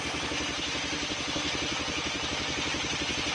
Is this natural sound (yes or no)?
no